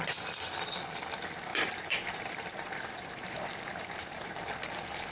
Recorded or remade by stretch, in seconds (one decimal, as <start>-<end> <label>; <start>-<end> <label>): 0.0-1.5 recorded; 1.5-4.6 remade; 4.6-5.1 recorded

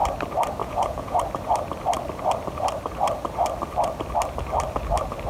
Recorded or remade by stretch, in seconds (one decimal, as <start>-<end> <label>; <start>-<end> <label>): 0.0-0.6 recorded; 0.6-1.2 remade; 1.2-5.3 recorded

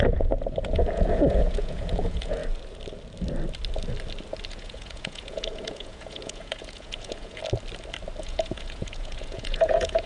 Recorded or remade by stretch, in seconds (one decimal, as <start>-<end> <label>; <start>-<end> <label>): 0.0-2.4 remade; 2.4-4.5 recorded; 4.5-7.4 remade; 7.4-8.2 recorded; 8.2-10.1 remade

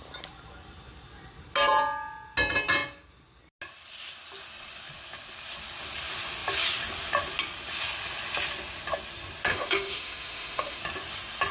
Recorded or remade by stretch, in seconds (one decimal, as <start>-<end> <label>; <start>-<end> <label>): 0.0-9.5 recorded; 9.5-10.8 remade; 10.8-11.5 recorded

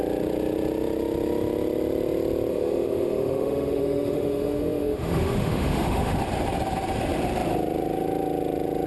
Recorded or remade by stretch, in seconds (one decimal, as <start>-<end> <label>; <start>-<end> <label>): 0.0-2.5 recorded; 2.5-6.2 remade; 6.2-8.9 recorded

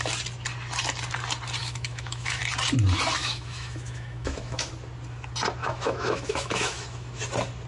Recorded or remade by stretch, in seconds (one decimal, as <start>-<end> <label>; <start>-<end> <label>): 0.0-1.6 recorded; 1.6-2.4 remade; 2.4-3.2 recorded; 3.2-4.7 remade; 4.7-5.6 recorded; 5.6-7.2 remade; 7.2-7.7 recorded

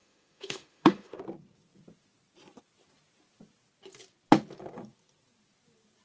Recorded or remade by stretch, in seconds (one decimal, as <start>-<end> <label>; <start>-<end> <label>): 0.0-1.2 remade; 1.2-6.0 recorded